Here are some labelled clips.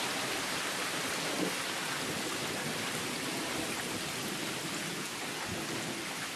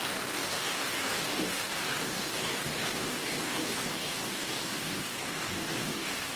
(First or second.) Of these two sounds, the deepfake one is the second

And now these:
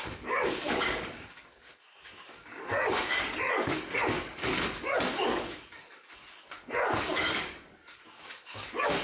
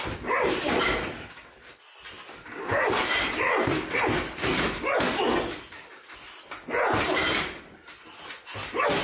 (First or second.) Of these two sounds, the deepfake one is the first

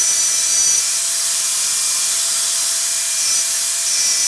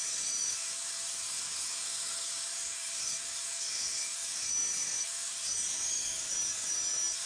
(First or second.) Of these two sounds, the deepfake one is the second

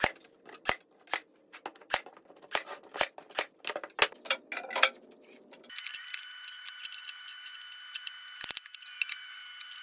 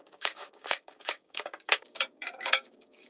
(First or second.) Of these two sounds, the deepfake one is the second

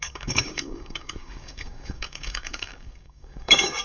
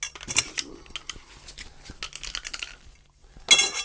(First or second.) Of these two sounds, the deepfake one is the first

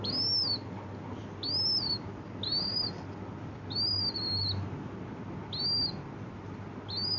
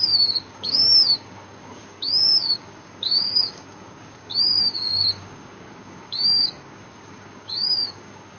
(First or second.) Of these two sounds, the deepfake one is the second